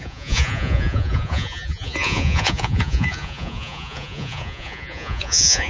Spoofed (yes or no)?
yes